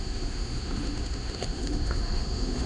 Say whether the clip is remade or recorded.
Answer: remade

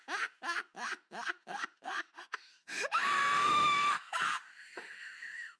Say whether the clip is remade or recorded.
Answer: remade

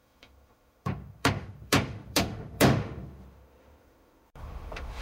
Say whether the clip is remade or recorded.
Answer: remade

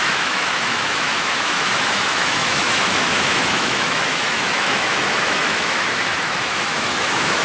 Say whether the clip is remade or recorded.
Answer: remade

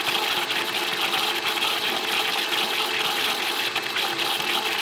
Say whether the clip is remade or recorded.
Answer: recorded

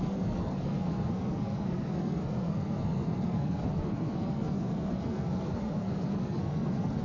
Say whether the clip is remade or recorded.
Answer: remade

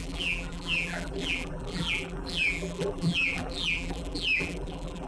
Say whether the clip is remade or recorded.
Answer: remade